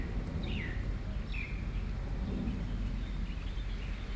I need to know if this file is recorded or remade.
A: recorded